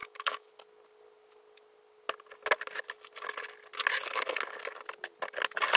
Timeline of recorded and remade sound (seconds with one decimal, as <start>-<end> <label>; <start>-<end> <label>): 0.0-0.5 remade; 0.5-5.8 recorded